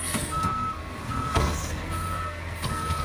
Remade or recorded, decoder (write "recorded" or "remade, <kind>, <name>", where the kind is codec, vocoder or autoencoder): remade, codec, SNAC